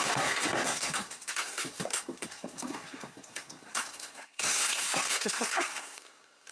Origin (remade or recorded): remade